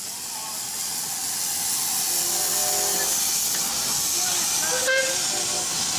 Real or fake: real